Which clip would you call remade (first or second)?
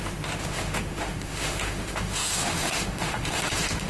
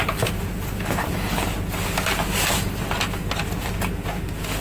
first